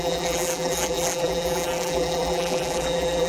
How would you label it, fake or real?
fake